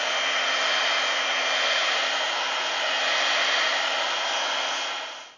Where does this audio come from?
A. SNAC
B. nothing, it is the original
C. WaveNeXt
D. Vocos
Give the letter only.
B